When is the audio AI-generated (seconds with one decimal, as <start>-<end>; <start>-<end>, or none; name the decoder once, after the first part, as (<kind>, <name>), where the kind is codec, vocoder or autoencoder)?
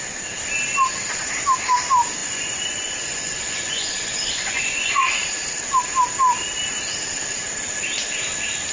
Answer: 2.2-5.1 (vocoder, Vocos)